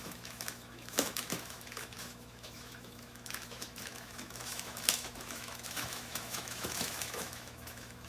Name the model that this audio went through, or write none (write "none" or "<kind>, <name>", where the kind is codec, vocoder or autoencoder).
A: autoencoder, DAC-VAE